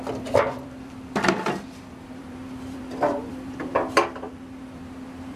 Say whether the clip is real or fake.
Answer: fake